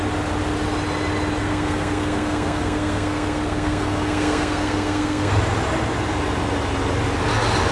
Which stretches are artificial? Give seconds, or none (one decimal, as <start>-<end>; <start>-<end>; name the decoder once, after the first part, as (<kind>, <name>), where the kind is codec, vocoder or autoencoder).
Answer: 1.4-5.3 (codec, SNAC)

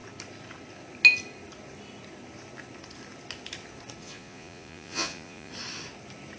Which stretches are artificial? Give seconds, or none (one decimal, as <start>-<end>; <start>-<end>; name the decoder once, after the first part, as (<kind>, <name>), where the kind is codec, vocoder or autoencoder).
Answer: 4.0-5.5 (vocoder, Vocos)

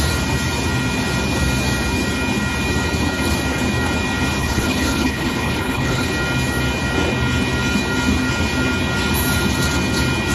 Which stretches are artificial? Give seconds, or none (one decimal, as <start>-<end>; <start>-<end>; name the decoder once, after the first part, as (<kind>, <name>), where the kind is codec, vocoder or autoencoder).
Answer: 4.4-6.1 (codec, HILCodec)